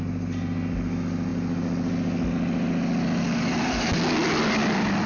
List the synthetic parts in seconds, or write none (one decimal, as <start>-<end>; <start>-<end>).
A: none